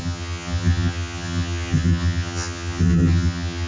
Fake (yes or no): yes